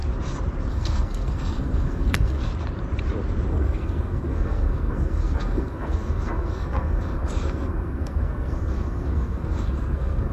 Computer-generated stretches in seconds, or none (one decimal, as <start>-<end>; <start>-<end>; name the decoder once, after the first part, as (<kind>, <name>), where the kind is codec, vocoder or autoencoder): 0.7-2.5 (codec, SNAC); 3.5-10.3